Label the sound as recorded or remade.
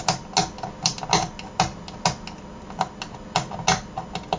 recorded